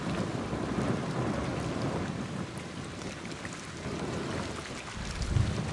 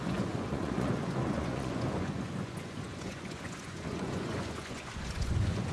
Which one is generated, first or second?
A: second